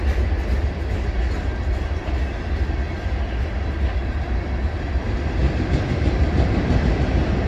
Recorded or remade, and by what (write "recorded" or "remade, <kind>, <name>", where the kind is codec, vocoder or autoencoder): recorded